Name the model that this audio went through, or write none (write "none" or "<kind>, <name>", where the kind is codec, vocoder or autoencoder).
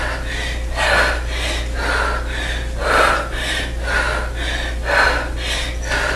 none